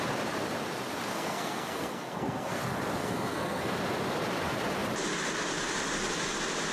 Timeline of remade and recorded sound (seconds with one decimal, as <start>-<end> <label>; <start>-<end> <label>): 0.0-1.1 recorded; 1.1-2.6 remade; 2.6-3.0 recorded; 3.0-3.7 remade; 3.7-6.7 recorded